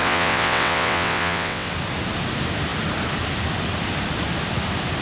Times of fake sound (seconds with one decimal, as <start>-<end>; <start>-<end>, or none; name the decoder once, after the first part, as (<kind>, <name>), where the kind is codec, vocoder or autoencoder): 0.0-1.7 (vocoder, WaveNeXt)